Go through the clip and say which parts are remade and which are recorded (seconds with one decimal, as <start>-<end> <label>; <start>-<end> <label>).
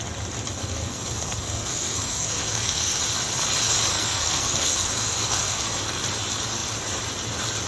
0.0-0.6 recorded; 0.6-3.0 remade; 3.0-3.9 recorded; 3.9-6.0 remade; 6.0-7.7 recorded